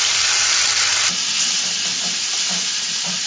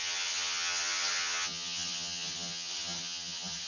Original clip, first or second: first